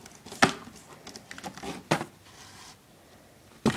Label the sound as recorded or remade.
recorded